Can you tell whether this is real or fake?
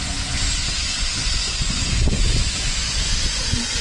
fake